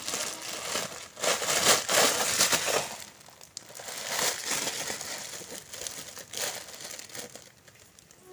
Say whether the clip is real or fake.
real